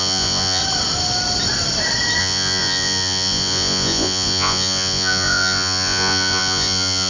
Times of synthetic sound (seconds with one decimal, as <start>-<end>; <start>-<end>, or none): 0.0-0.6; 2.2-7.1